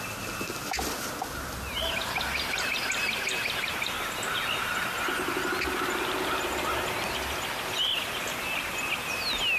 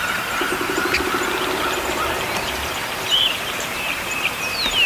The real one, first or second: first